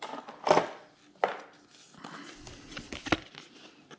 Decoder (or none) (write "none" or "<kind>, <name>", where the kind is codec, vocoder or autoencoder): none